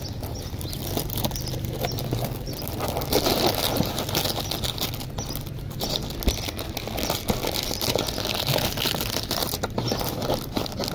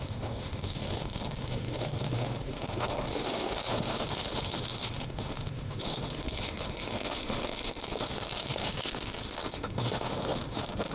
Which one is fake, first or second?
second